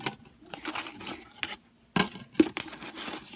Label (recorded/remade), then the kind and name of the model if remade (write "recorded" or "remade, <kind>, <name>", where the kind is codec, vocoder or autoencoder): recorded